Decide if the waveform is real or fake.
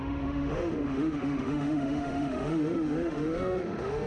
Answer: fake